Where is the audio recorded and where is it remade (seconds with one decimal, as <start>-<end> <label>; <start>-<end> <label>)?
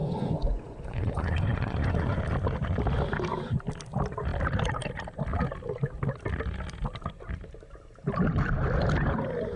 0.0-2.2 remade; 2.2-9.6 recorded